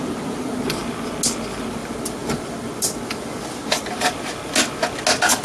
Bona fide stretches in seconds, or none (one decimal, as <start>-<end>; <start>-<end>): 0.0-5.4